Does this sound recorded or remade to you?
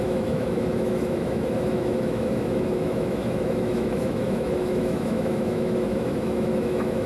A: remade